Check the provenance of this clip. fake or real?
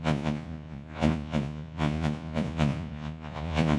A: fake